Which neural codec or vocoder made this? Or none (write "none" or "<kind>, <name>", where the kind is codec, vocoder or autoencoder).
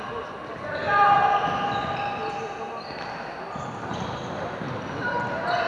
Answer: none